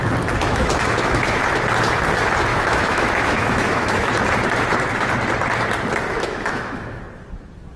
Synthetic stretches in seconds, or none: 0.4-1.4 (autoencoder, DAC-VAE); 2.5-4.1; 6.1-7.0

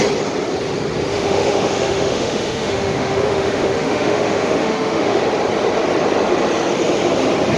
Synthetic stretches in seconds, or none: 1.1-5.2 (autoencoder, DAC-VAE)

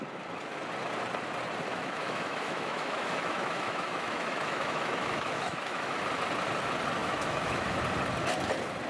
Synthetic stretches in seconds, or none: 1.7-6.0 (autoencoder, DAC-VAE); 7.0-7.8

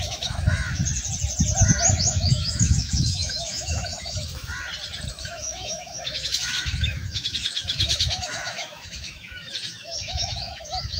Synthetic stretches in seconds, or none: 0.0-0.8 (autoencoder, DAC-VAE); 1.9-4.5; 5.1-11.0

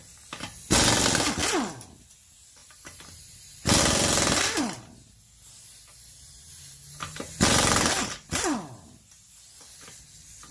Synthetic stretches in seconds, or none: none

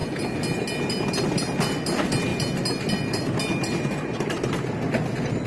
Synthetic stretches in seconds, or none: none